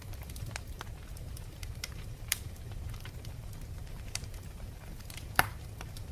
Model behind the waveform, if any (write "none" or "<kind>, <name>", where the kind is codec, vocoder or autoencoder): vocoder, BigVGAN v2